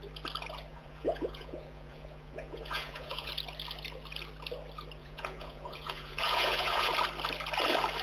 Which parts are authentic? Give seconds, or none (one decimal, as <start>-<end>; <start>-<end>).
0.0-0.7; 3.3-5.0; 6.9-8.0

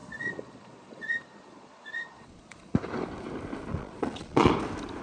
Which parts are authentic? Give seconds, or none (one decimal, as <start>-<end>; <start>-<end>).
2.7-3.7; 4.5-5.0

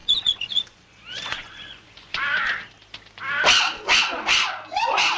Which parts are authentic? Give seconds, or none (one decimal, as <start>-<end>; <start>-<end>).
2.2-5.2

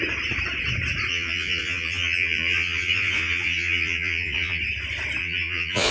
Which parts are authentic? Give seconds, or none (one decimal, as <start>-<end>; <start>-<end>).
0.0-1.1; 4.6-5.2